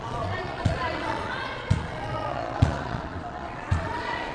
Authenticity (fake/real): fake